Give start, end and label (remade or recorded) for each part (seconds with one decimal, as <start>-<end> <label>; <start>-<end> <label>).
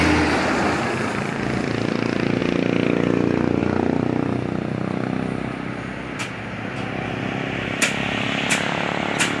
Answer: 0.0-9.4 recorded